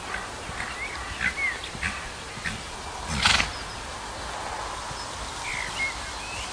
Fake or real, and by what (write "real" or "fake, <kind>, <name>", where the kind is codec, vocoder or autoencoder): real